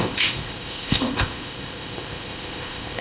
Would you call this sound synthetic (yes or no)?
yes